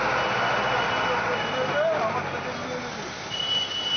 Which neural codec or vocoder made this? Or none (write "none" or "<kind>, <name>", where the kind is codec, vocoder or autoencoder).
none